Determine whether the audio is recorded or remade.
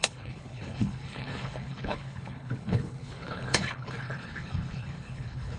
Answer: remade